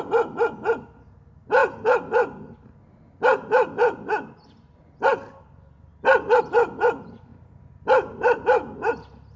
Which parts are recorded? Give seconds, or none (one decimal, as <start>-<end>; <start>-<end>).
0.0-9.4